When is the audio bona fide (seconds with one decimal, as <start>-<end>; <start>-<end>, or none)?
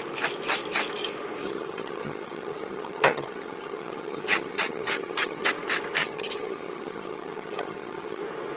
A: 0.0-1.4; 5.5-6.0; 8.2-8.6